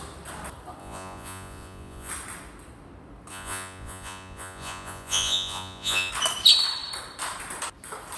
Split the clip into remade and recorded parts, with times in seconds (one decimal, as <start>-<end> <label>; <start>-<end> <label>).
0.0-0.8 recorded; 0.8-2.1 remade; 2.1-3.3 recorded; 3.3-6.1 remade; 6.1-8.2 recorded